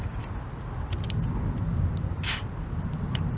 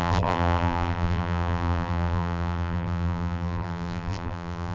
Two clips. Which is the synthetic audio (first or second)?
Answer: second